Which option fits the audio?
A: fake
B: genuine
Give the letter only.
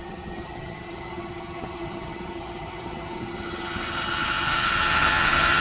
A